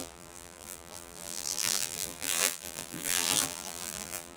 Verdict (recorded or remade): remade